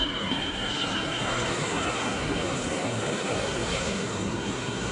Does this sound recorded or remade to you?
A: remade